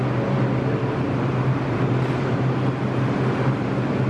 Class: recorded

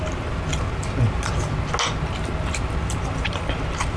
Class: recorded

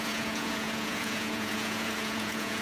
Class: remade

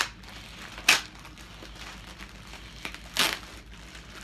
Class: recorded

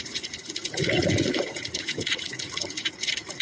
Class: remade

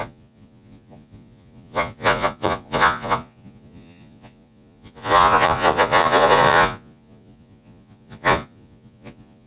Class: remade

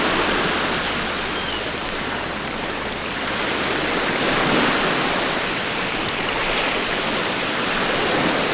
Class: recorded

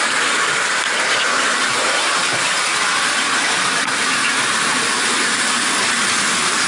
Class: recorded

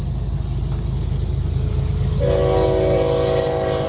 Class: recorded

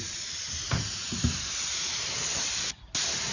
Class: recorded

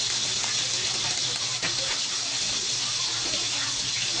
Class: recorded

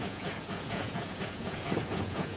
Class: remade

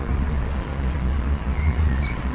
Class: remade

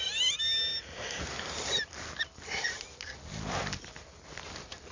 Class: recorded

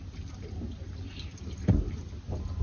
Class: recorded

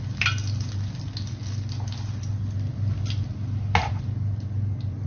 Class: recorded